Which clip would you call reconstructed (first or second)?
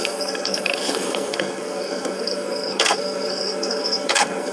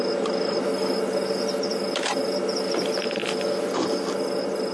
first